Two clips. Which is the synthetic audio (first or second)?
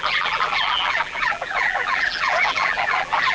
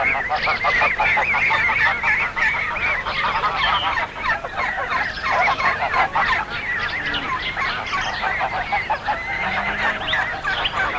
first